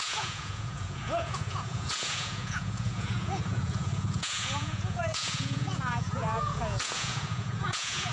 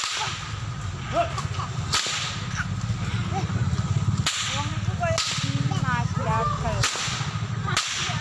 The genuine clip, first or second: second